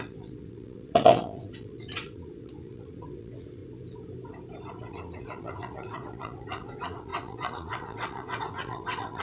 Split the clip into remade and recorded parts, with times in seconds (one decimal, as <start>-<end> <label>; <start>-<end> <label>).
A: 0.0-3.6 remade; 3.6-4.7 recorded; 4.7-9.2 remade